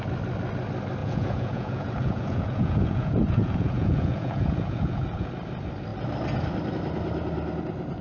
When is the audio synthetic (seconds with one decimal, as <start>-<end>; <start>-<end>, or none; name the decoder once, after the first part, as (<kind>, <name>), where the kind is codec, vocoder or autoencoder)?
1.0-5.3 (vocoder, Vocos)

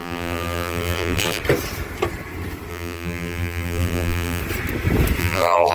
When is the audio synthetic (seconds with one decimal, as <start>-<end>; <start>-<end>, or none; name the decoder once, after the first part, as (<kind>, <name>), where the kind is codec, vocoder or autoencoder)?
0.0-1.4 (vocoder, BigVGAN v2); 2.7-4.4; 5.2-5.7

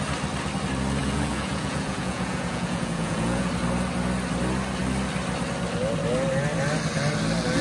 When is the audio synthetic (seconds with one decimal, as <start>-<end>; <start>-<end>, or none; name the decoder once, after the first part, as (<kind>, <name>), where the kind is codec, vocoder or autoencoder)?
1.0-3.5 (vocoder, Vocos)

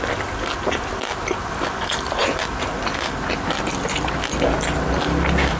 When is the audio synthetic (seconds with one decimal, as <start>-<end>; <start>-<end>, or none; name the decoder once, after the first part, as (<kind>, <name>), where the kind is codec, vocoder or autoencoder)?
none

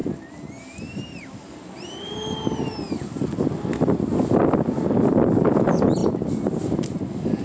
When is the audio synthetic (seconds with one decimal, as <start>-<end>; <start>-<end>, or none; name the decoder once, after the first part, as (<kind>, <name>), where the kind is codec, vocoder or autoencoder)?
none